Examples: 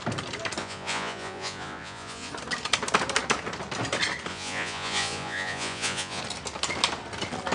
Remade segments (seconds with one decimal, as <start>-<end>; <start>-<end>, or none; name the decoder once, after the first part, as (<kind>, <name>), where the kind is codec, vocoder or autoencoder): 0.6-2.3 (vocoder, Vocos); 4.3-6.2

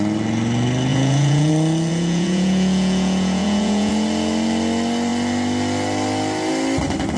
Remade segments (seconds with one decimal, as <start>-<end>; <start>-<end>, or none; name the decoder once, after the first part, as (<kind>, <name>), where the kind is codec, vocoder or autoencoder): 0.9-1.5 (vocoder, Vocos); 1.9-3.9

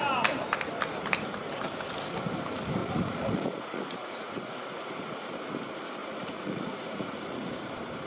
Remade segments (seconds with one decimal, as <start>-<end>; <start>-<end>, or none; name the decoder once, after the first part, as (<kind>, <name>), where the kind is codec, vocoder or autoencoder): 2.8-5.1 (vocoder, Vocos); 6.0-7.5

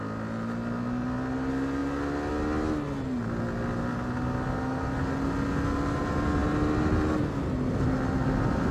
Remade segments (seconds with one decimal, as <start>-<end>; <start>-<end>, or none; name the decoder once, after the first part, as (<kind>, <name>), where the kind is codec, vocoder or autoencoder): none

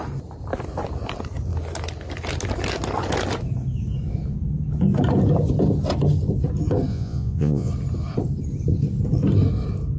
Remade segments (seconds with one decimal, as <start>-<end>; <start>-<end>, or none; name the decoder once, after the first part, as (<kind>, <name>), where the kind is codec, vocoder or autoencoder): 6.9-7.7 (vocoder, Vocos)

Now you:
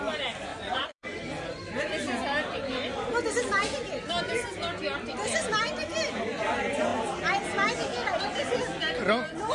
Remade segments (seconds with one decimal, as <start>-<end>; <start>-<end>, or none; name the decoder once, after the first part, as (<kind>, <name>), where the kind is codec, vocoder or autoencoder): 0.5-1.2 (vocoder, Vocos)

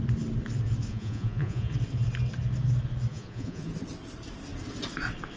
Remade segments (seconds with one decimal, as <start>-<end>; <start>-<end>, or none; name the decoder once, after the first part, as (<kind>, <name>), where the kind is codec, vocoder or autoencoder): 0.9-1.7 (vocoder, Vocos); 3.1-3.7

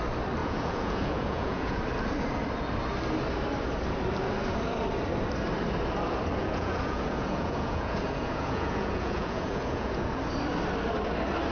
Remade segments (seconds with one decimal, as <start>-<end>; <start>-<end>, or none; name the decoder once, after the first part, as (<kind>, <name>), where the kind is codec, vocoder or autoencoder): 0.4-1.8 (vocoder, Vocos); 6.4-10.2